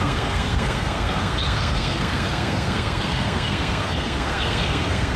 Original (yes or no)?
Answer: no